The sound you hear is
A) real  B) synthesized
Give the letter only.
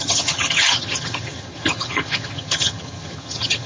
B